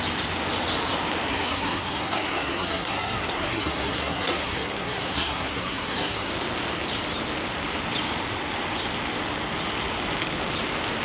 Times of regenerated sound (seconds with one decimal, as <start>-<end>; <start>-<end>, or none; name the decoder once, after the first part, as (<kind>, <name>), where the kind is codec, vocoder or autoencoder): 1.3-6.3 (codec, SNAC)